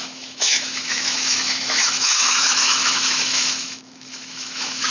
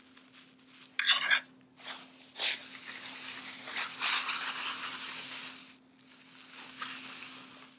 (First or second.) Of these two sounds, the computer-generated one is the first